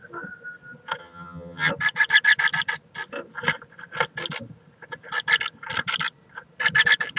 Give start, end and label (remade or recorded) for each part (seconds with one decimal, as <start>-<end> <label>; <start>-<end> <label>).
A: 0.0-1.0 recorded; 1.0-1.7 remade; 1.7-7.2 recorded

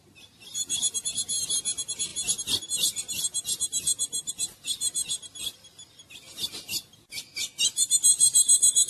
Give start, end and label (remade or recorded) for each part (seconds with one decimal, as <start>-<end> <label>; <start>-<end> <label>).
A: 0.0-8.9 recorded

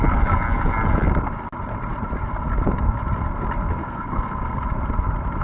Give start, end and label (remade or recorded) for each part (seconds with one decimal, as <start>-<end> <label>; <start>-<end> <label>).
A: 0.0-3.8 recorded; 3.8-4.6 remade; 4.6-5.4 recorded

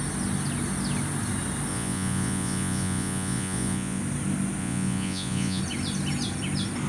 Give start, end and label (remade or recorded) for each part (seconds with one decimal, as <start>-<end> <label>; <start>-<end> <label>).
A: 0.0-1.7 recorded; 1.7-4.0 remade; 4.0-4.6 recorded; 4.6-5.6 remade; 5.6-6.9 recorded

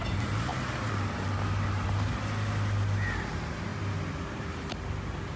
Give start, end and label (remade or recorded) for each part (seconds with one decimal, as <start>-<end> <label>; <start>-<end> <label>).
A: 0.0-5.4 recorded

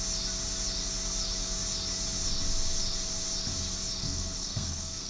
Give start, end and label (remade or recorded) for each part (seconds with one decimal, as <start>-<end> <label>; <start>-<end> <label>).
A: 0.0-4.0 recorded; 4.0-5.1 remade

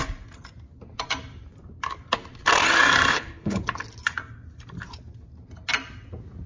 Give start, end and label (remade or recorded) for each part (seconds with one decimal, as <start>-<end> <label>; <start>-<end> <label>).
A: 0.0-3.1 recorded; 3.1-3.6 remade; 3.6-6.5 recorded

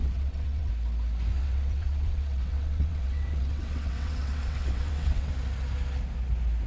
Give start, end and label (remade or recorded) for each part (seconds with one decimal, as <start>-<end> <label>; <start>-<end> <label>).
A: 0.0-0.7 remade; 0.7-1.3 recorded; 1.3-5.3 remade; 5.3-6.7 recorded